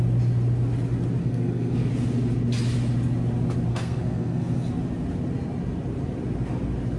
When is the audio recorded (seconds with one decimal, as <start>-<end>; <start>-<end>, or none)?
0.0-1.2; 1.9-3.7; 4.7-7.0